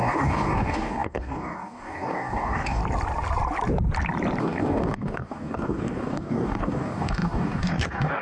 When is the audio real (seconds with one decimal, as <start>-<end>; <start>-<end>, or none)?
2.8-4.4